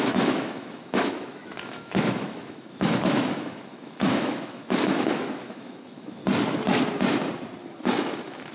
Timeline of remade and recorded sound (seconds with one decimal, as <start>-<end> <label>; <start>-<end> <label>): 0.0-6.2 remade; 6.2-7.8 recorded; 7.8-8.5 remade